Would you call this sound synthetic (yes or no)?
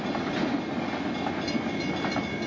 no